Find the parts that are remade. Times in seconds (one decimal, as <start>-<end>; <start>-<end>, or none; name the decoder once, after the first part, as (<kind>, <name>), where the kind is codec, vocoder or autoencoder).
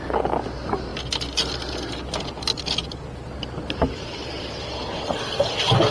none